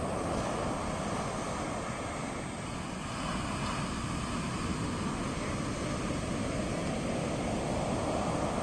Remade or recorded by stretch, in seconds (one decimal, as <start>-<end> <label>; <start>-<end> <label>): 0.0-2.7 recorded; 2.7-3.3 remade; 3.3-8.6 recorded

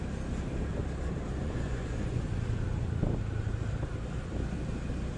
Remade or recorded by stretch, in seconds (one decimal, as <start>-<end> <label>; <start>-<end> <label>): 0.0-1.4 recorded; 1.4-2.2 remade; 2.2-5.2 recorded

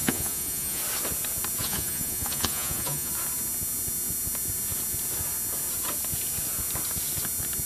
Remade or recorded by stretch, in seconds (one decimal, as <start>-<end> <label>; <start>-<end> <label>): 0.0-0.8 remade; 0.8-1.6 recorded; 1.6-3.1 remade; 3.1-7.7 recorded

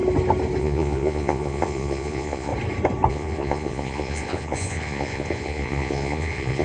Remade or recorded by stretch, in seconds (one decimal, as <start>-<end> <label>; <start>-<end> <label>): 0.0-0.6 recorded; 0.6-2.5 remade; 2.5-3.1 recorded; 3.1-6.6 remade

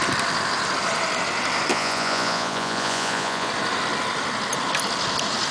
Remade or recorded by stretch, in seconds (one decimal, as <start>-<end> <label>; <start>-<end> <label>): 0.0-1.7 recorded; 1.7-3.5 remade; 3.5-5.5 recorded